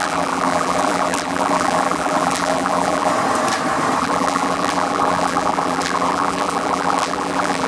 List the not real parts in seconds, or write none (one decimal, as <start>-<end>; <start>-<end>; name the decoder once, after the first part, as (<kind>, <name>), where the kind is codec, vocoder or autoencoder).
0.0-3.1 (vocoder, BigVGAN v2); 4.0-7.7